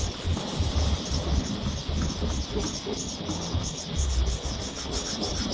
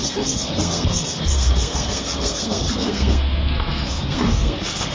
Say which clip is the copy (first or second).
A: second